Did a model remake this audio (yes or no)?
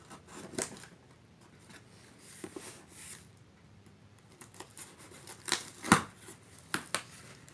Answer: no